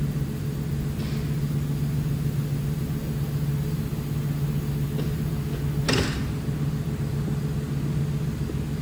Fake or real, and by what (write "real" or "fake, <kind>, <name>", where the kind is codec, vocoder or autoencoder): real